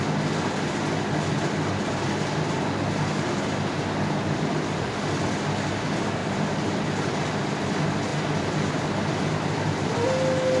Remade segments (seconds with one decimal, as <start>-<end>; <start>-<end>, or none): 6.2-6.8